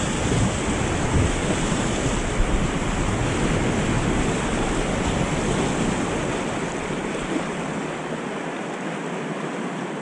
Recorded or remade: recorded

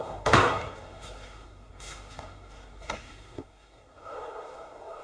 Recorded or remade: remade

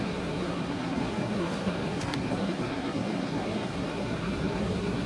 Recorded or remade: remade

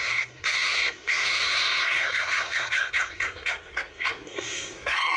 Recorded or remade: remade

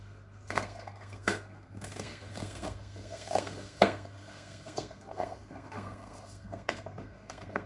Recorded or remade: remade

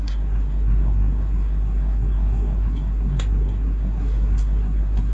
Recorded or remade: remade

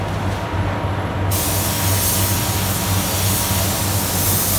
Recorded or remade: recorded